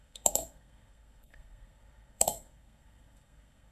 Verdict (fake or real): fake